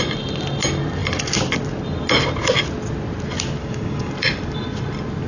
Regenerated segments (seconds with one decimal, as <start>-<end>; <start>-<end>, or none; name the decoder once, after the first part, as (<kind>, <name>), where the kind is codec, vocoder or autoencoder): 3.6-4.1 (codec, DAC)